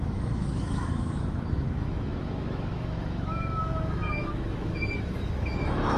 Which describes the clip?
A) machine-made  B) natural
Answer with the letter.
A